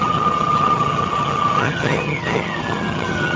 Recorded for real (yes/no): no